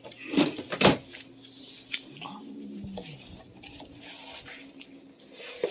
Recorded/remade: recorded